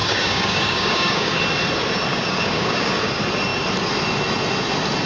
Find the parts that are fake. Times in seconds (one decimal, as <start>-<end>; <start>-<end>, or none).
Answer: 0.0-1.4; 2.1-3.1